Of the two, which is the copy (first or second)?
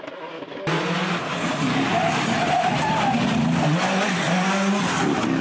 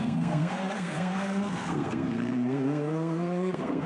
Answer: second